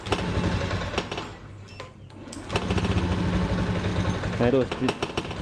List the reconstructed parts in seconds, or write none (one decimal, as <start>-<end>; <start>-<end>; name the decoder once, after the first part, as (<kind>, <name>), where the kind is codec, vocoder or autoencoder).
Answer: none